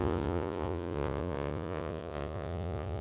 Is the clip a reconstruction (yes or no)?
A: yes